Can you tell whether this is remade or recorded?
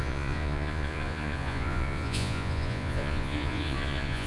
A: remade